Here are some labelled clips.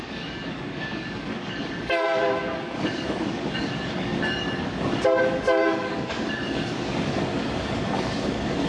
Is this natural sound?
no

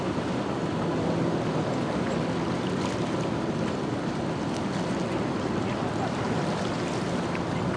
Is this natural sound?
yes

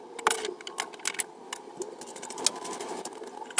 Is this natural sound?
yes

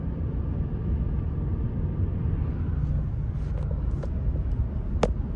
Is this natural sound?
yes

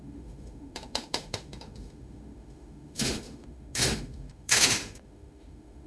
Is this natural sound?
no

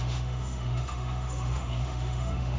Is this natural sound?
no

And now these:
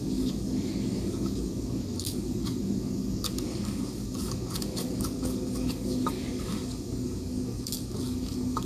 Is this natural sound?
no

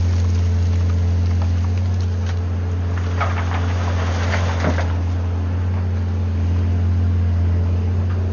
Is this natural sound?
yes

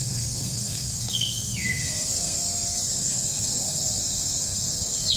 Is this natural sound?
no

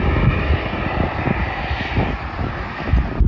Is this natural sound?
yes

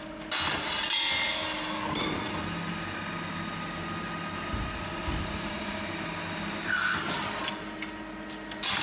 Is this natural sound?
yes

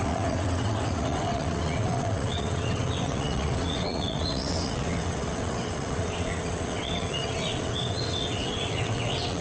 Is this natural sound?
no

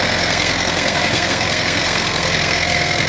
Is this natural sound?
no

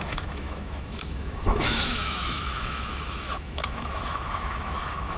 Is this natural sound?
no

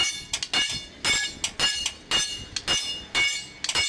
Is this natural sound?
yes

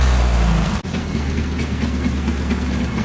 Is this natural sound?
no